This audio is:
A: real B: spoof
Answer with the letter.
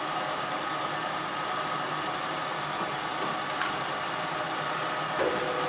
A